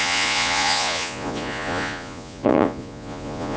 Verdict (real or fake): fake